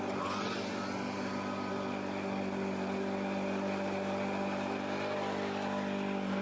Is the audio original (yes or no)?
yes